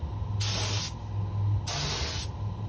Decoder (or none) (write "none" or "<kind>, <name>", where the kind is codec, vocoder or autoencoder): none